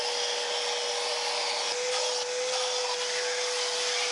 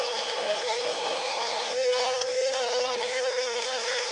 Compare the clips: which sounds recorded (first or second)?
first